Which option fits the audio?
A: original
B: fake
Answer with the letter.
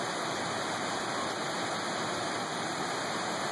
A